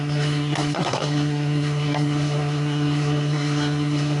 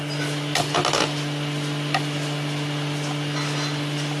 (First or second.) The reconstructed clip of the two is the first